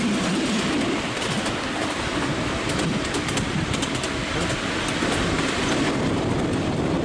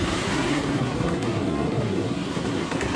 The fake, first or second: second